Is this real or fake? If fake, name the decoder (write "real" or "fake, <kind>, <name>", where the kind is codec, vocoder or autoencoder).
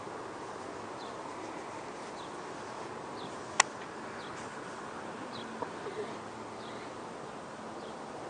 real